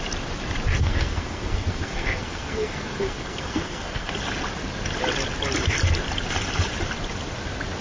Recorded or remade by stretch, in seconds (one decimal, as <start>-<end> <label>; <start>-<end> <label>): 0.0-0.8 recorded; 0.8-4.1 remade; 4.1-7.8 recorded

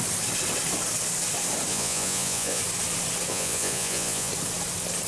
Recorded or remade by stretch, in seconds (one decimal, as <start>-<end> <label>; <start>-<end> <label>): 0.0-1.7 recorded; 1.7-2.6 remade; 2.6-3.3 recorded; 3.3-4.3 remade; 4.3-5.1 recorded